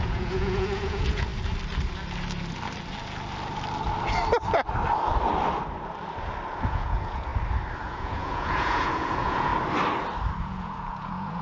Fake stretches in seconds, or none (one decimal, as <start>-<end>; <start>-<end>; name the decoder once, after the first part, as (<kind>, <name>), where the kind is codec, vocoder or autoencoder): 0.0-1.3 (vocoder, Vocos); 6.5-7.3; 7.8-9.5; 10.4-11.4